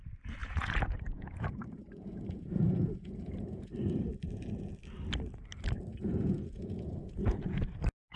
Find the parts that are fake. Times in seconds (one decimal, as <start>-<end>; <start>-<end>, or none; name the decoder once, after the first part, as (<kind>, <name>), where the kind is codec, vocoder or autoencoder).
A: 0.4-3.7 (vocoder, Vocos); 5.9-7.7